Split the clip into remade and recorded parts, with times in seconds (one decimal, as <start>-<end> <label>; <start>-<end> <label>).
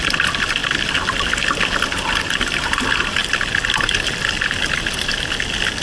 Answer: 0.0-5.8 recorded